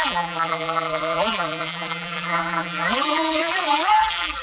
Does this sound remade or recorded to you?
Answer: remade